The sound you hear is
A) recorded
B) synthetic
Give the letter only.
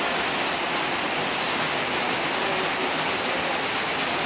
A